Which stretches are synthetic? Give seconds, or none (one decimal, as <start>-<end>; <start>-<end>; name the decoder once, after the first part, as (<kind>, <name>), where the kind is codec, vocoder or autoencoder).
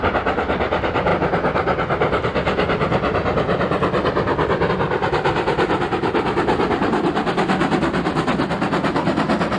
1.1-4.7 (vocoder, BigVGAN v2)